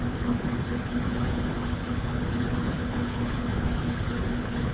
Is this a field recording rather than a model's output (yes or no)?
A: no